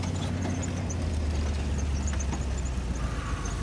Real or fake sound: real